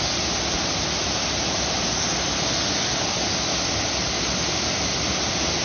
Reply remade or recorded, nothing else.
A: recorded